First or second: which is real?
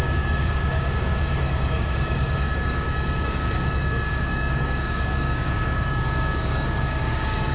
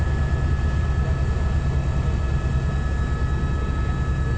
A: second